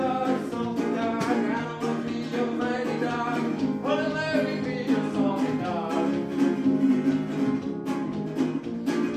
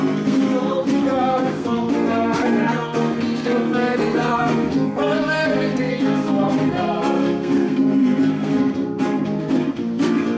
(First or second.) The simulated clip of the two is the second